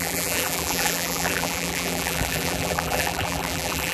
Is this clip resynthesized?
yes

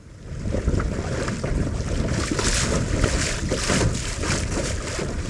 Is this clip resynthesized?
no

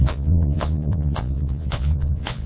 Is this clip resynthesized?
yes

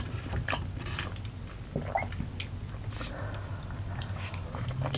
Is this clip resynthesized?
no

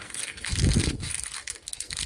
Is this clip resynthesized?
yes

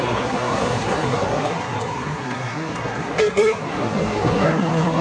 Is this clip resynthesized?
yes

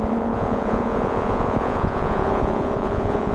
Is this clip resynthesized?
yes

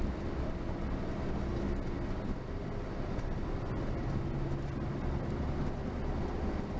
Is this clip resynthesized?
no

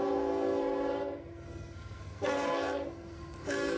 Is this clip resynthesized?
yes